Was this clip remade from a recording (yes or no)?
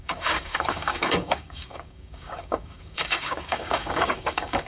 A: yes